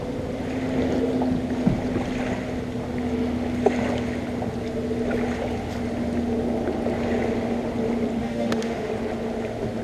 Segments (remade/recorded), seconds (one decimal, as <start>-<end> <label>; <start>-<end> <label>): 0.0-8.2 recorded; 8.2-8.9 remade; 8.9-9.8 recorded